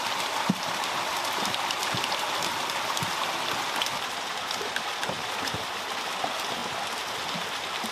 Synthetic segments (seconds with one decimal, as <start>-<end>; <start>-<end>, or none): none